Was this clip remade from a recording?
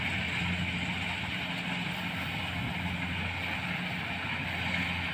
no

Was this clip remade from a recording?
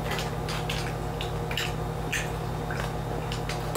no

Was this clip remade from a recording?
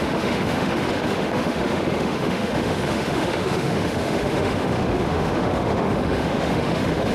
yes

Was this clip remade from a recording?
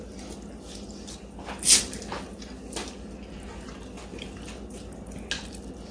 no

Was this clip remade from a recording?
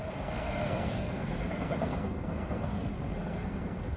yes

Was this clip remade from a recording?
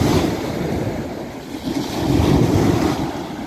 no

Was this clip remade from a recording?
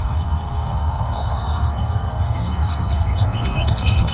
yes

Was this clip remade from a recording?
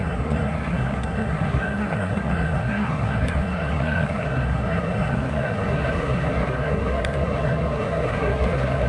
yes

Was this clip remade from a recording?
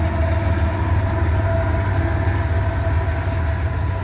no